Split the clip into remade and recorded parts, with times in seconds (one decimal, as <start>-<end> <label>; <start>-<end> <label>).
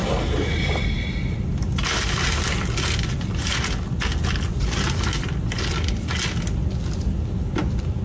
0.0-8.0 recorded